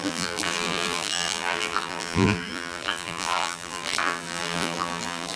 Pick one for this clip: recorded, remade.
remade